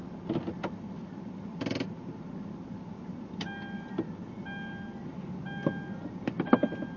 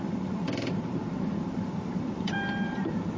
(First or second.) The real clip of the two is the first